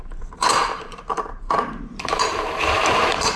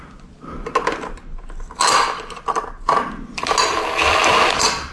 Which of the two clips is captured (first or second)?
second